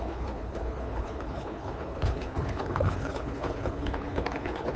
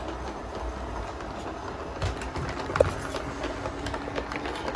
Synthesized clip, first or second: first